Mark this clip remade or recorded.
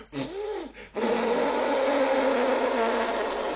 recorded